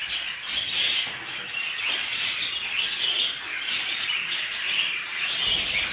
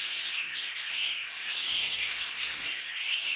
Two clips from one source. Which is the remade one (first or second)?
second